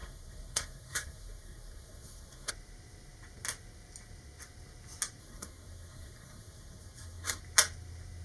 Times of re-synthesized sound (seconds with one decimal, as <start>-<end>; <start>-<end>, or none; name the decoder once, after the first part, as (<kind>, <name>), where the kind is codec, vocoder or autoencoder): 0.0-2.5 (codec, SNAC); 5.2-7.4